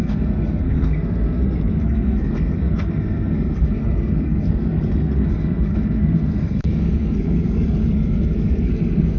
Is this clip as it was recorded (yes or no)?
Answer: no